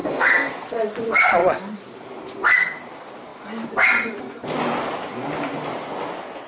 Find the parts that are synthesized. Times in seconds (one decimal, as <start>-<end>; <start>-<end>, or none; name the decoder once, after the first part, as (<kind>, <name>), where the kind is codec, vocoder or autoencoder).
0.0-0.5 (codec, SNAC)